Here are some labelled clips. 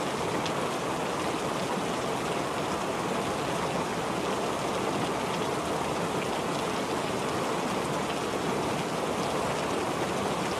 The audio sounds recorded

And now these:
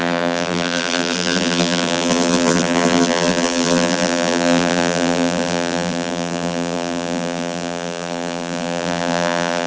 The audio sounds remade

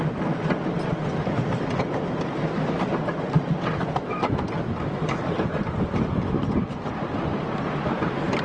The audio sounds recorded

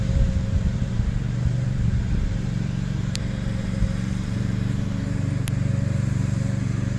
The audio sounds remade